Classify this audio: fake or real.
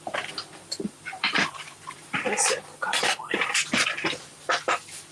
fake